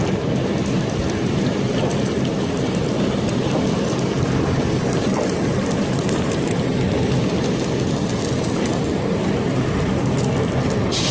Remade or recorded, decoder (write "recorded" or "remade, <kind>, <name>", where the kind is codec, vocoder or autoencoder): recorded